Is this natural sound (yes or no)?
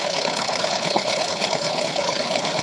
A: no